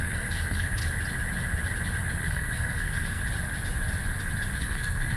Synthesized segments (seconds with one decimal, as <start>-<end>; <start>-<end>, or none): 0.0-0.8; 2.3-3.2; 4.6-5.2